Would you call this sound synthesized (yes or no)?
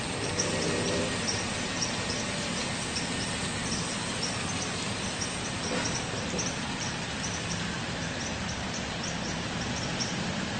no